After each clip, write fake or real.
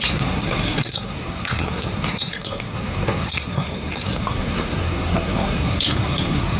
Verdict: fake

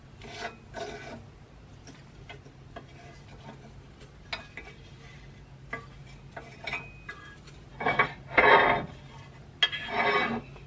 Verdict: real